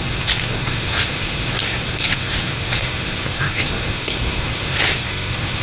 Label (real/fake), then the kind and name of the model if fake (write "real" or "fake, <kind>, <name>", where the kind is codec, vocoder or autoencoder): fake, codec, SNAC